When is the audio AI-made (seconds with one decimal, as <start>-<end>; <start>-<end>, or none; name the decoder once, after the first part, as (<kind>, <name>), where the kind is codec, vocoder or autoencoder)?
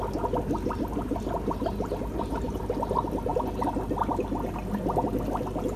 none